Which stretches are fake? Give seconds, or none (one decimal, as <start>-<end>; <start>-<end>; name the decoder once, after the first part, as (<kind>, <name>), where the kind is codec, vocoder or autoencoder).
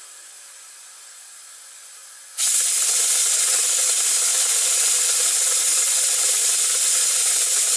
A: none